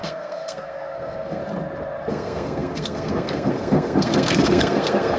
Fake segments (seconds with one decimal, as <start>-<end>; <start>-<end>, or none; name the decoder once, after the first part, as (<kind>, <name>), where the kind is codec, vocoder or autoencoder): 0.0-1.4 (codec, SNAC); 2.1-5.2